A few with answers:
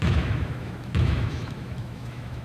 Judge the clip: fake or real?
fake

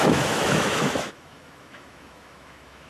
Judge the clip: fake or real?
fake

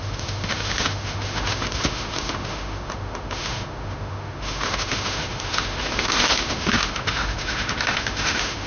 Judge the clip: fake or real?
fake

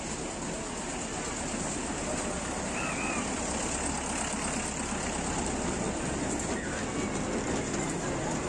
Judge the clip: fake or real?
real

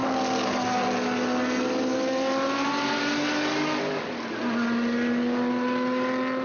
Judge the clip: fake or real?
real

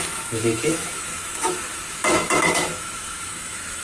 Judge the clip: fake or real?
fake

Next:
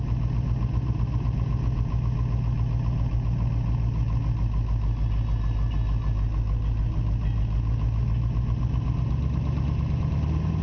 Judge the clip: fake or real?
real